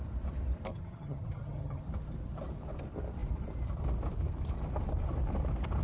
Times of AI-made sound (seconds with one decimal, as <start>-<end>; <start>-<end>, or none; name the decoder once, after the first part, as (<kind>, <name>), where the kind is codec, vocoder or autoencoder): 0.7-1.8 (vocoder, HiFi-GAN)